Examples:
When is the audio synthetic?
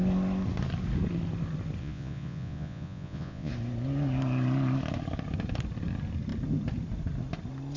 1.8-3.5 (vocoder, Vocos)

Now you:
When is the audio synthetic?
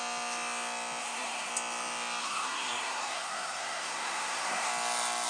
1.0-1.5 (codec, SNAC); 2.2-4.7